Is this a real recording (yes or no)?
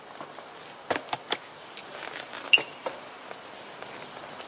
yes